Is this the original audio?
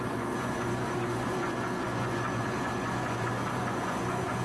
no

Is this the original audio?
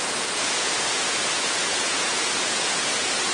no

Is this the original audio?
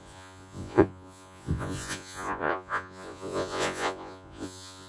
no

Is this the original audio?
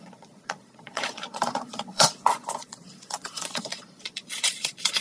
no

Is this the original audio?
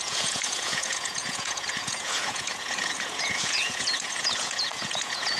no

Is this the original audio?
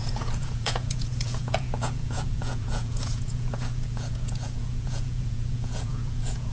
no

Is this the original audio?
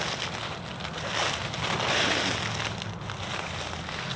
yes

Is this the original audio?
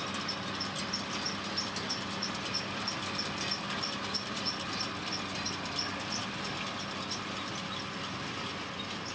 yes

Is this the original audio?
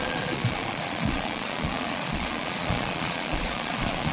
no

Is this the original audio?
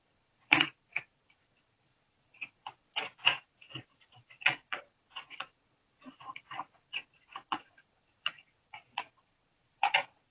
no